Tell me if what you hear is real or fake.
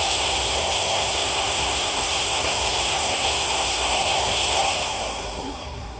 fake